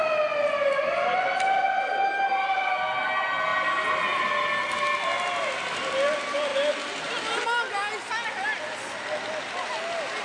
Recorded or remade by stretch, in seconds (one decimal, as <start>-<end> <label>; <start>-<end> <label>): 0.0-10.2 recorded